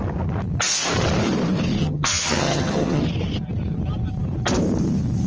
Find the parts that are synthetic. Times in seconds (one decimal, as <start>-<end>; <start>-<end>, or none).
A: 1.8-3.0